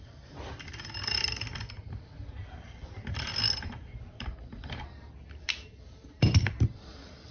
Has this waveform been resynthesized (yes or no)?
yes